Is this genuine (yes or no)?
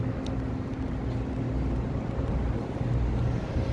yes